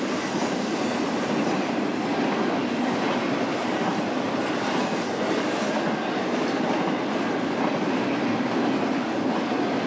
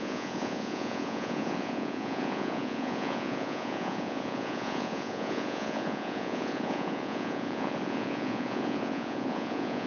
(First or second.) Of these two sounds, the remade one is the second